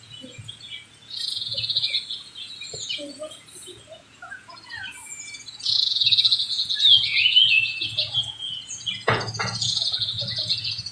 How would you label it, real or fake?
fake